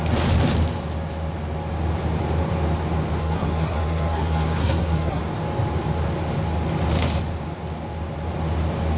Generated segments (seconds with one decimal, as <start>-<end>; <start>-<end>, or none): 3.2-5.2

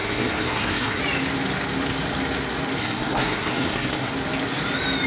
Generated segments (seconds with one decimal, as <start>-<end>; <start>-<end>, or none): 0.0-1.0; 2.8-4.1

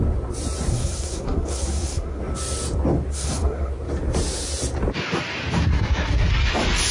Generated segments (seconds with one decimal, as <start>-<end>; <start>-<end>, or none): 0.7-2.2; 3.1-3.7; 5.6-6.3

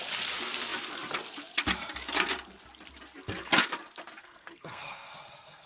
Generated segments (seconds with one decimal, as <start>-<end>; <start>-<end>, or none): 4.2-5.7

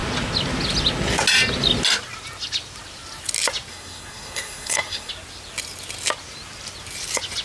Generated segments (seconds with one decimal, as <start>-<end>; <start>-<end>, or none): 3.7-5.1

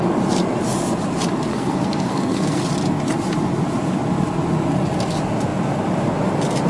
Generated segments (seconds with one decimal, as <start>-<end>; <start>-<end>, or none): 1.5-2.6